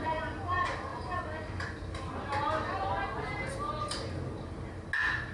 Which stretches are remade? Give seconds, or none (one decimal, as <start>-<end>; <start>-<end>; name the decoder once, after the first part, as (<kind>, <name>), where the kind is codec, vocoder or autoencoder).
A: none